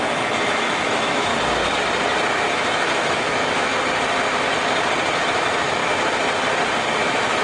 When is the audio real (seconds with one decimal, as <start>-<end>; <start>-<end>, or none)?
1.3-2.4; 3.7-5.2; 5.8-6.9